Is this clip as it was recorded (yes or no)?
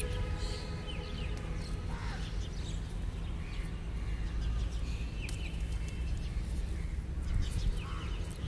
yes